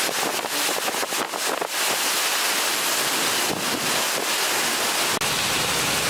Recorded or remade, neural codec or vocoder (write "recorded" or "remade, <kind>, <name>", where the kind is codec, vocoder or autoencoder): recorded